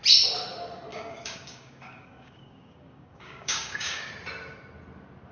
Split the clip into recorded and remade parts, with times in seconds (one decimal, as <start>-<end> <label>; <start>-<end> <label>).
0.0-0.9 recorded; 0.9-4.1 remade; 4.1-5.3 recorded